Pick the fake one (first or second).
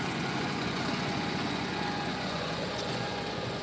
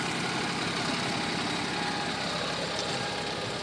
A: first